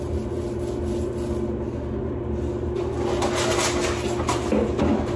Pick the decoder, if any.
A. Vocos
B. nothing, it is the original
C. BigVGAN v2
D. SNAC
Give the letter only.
B